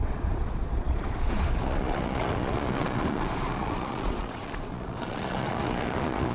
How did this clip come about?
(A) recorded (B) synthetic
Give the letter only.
B